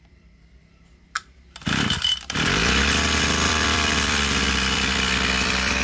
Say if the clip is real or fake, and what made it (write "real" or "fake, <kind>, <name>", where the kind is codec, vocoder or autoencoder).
fake, vocoder, BigVGAN v2